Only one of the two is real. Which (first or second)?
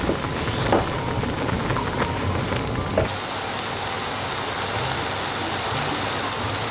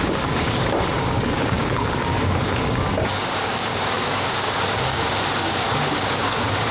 first